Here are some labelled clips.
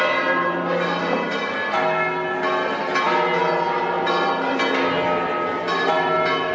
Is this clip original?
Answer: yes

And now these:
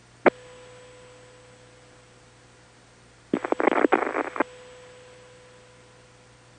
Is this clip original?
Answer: yes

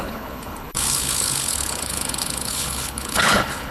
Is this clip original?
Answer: no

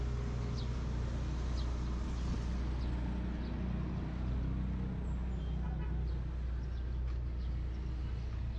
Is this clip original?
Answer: yes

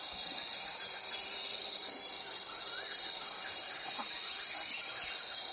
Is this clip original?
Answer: yes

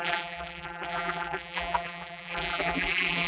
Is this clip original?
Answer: no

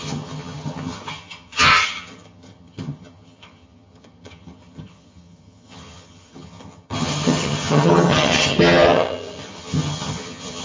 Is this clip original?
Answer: no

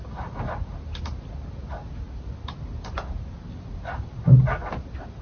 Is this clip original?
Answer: yes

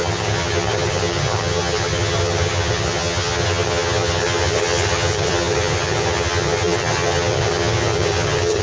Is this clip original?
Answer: no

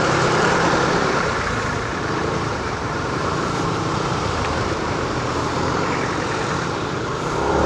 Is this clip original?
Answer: no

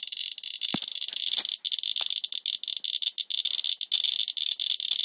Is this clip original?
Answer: yes